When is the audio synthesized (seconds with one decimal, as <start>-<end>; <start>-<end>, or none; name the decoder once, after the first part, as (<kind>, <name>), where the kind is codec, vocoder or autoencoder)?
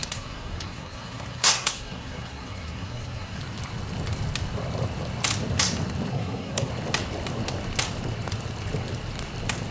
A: 0.0-3.4 (codec, SNAC); 6.1-6.7